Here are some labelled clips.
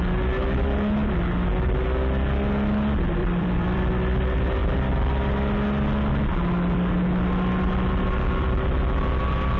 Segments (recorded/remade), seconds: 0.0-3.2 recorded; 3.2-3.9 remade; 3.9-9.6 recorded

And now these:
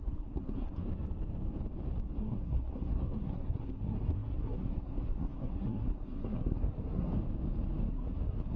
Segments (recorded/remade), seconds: 0.0-0.8 remade; 0.8-2.2 recorded; 2.2-7.1 remade; 7.1-7.9 recorded; 7.9-8.6 remade

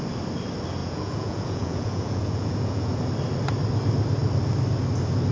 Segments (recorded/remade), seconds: 0.0-0.8 recorded; 0.8-3.0 remade; 3.0-5.3 recorded

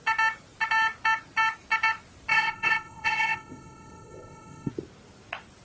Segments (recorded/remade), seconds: 0.0-2.3 recorded; 2.3-4.7 remade; 4.7-5.6 recorded

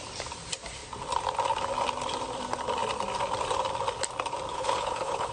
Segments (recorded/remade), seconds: 0.0-4.5 recorded; 4.5-5.3 remade

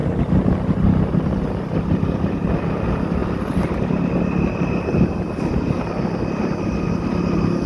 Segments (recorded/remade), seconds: 0.0-7.7 recorded

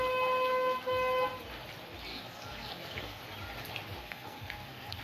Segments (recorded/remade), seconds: 0.0-2.1 recorded; 2.1-3.2 remade; 3.2-4.0 recorded; 4.0-5.0 remade

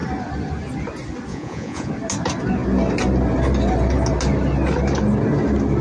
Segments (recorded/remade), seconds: 0.0-1.3 recorded; 1.3-1.9 remade; 1.9-5.8 recorded